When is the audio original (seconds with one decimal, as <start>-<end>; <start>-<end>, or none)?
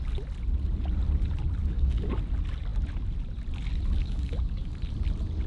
0.0-1.6; 2.1-4.0; 4.7-5.5